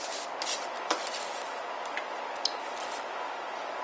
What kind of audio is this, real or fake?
real